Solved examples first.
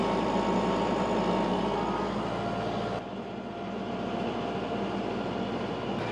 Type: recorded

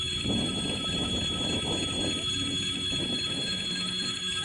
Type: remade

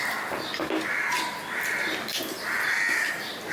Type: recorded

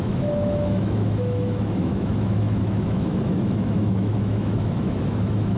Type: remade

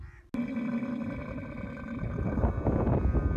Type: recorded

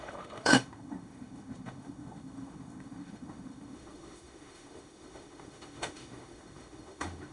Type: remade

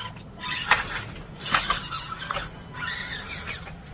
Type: recorded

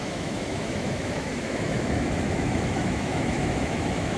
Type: remade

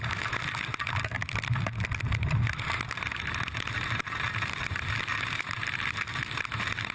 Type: recorded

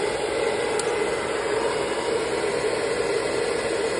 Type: recorded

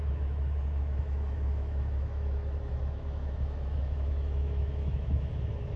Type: remade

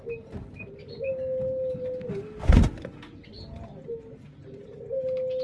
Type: recorded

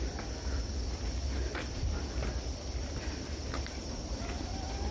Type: recorded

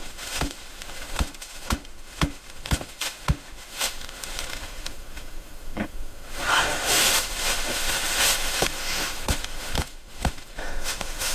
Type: remade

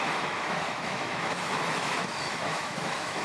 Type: remade